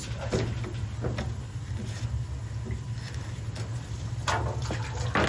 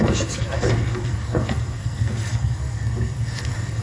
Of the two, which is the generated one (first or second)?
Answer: second